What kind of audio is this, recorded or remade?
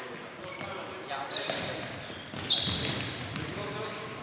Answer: recorded